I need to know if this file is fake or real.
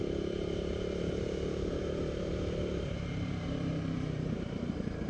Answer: fake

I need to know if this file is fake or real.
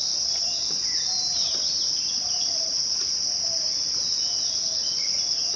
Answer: real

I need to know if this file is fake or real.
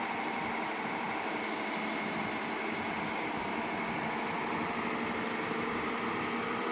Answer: real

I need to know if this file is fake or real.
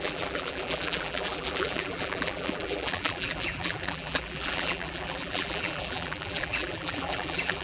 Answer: fake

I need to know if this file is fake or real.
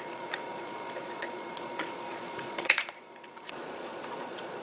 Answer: fake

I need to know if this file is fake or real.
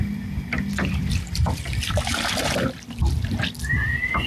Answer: fake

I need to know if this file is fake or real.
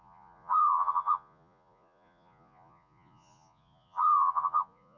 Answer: fake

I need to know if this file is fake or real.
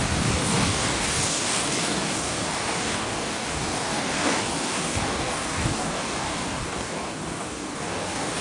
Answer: fake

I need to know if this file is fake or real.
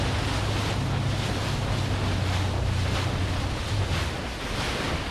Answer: real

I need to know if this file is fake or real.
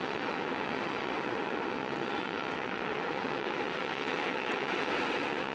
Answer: fake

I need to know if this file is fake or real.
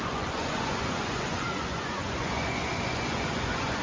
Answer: fake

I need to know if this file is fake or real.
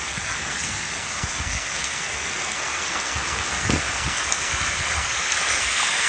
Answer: fake